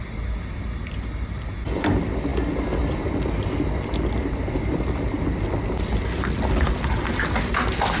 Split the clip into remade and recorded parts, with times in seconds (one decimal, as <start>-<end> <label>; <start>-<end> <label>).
0.0-8.0 recorded